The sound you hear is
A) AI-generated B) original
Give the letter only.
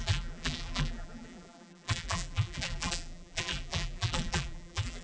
A